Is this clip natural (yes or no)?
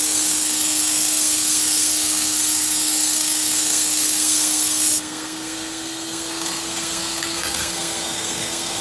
no